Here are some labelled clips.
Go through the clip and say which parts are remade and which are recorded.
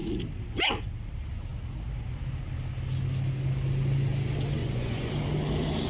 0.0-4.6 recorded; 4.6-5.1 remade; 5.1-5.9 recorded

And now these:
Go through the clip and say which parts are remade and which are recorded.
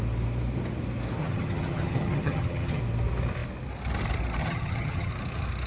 0.0-1.2 recorded; 1.2-2.8 remade; 2.8-4.4 recorded; 4.4-5.1 remade; 5.1-5.7 recorded